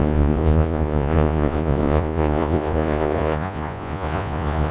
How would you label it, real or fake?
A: fake